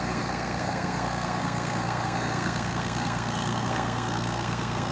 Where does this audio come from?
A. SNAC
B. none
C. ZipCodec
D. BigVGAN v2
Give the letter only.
A